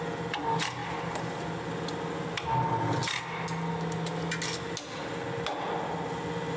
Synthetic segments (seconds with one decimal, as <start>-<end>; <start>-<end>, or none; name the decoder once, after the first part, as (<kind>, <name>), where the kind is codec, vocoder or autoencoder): none